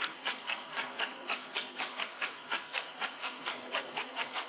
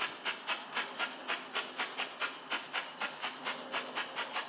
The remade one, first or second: first